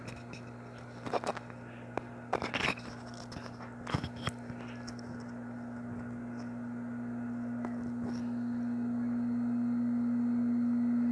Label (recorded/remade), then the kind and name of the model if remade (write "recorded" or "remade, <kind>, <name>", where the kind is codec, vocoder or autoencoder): recorded